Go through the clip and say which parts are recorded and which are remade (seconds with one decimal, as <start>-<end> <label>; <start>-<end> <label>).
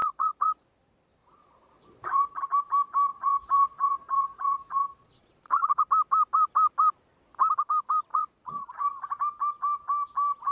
0.0-0.6 remade; 0.6-1.2 recorded; 1.2-2.4 remade; 2.4-3.1 recorded; 3.1-5.8 remade; 5.8-8.1 recorded; 8.1-8.9 remade; 8.9-10.5 recorded